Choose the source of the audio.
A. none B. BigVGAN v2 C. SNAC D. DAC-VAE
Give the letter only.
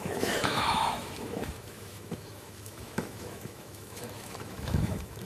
D